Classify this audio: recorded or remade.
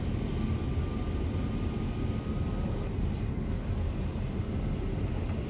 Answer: recorded